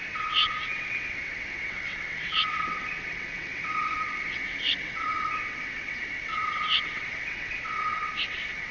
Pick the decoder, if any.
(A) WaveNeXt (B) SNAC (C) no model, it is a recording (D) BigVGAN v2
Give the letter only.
A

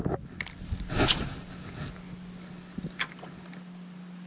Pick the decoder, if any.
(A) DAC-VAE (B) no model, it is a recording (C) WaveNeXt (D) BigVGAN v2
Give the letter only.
B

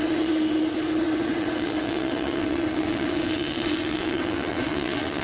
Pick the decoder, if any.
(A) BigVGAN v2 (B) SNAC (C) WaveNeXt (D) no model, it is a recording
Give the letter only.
C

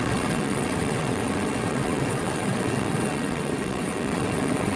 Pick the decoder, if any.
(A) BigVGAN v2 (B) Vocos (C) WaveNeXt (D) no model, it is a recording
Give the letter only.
C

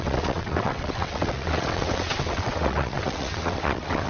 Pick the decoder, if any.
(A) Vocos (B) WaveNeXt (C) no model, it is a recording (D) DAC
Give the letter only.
B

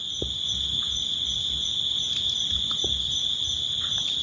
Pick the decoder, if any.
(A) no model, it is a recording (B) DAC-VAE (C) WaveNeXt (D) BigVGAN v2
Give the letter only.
A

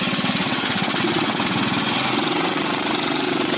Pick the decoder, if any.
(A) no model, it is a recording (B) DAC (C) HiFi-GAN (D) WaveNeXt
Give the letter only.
D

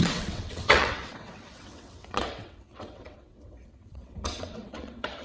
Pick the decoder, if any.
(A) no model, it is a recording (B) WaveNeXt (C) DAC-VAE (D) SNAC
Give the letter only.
B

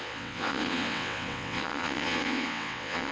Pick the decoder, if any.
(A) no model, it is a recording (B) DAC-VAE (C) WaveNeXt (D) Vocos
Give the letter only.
C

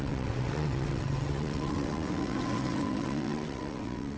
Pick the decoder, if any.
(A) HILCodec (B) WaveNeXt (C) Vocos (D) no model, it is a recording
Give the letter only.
B